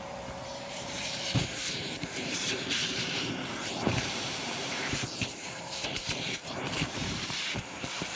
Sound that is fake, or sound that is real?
fake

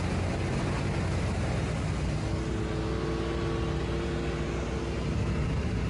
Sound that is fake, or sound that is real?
real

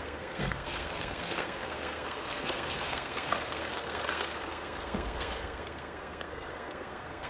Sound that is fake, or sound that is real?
fake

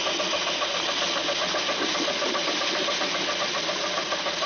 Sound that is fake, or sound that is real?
real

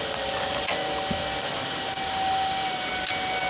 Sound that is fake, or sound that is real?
real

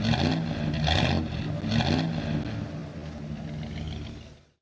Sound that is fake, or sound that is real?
real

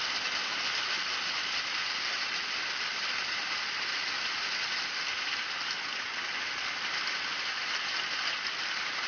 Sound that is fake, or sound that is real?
real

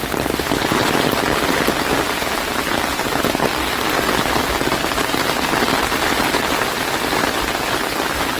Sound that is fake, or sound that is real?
real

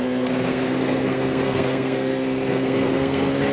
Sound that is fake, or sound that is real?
fake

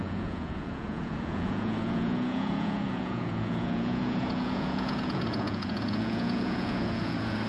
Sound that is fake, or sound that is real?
fake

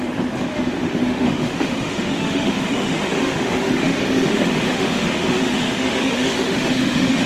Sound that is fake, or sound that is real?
fake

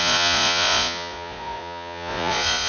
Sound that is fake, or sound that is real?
fake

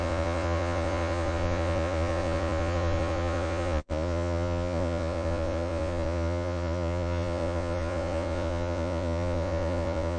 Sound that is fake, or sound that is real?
fake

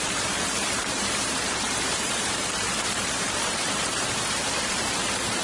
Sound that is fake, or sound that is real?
fake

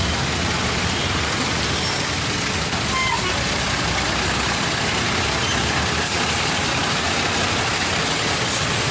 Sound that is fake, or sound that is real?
real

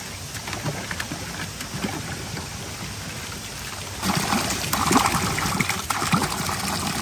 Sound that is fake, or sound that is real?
real